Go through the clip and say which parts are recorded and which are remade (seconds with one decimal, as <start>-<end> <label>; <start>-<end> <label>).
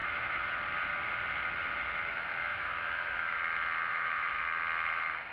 0.0-0.5 remade; 0.5-2.5 recorded; 2.5-3.4 remade; 3.4-3.9 recorded; 3.9-4.4 remade; 4.4-5.3 recorded